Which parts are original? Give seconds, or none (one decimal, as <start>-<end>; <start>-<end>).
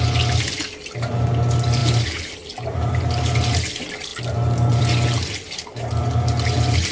0.0-1.8; 3.0-6.9